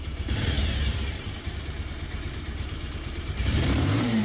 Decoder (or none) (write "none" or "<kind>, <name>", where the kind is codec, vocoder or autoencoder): vocoder, BigVGAN v2